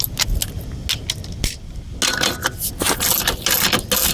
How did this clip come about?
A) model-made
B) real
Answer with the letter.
B